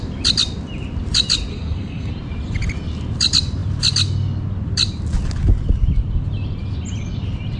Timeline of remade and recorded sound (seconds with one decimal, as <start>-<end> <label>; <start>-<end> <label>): 0.0-1.5 recorded; 1.5-2.1 remade; 2.1-7.6 recorded